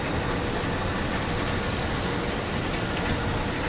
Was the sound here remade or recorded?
recorded